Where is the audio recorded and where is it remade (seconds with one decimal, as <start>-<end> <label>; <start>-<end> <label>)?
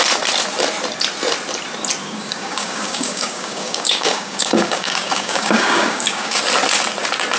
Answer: 0.0-2.0 recorded; 2.0-6.4 remade; 6.4-7.4 recorded